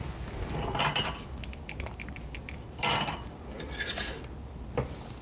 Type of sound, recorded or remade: recorded